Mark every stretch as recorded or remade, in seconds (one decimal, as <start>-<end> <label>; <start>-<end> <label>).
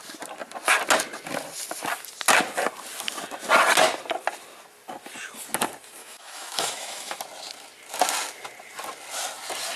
0.0-6.0 recorded; 6.0-7.2 remade; 7.2-9.8 recorded